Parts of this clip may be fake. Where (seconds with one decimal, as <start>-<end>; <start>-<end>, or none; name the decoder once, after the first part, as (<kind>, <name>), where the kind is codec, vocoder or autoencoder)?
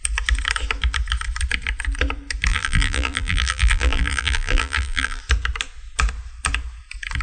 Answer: 2.5-5.2 (vocoder, BigVGAN v2)